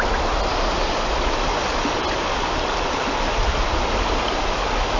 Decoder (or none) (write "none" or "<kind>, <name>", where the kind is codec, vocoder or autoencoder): none